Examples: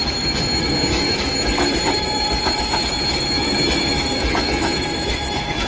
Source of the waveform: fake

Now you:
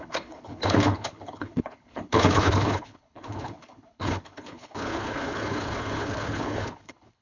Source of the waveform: fake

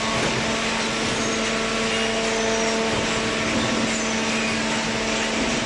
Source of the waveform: real